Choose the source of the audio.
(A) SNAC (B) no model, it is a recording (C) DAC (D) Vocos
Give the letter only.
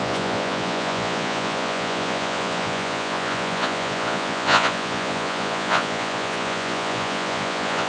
D